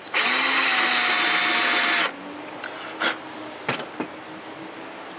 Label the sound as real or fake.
real